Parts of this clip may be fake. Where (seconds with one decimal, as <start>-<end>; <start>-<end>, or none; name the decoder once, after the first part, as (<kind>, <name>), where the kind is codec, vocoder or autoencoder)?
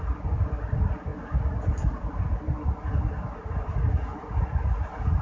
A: none